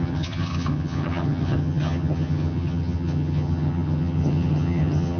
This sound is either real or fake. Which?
fake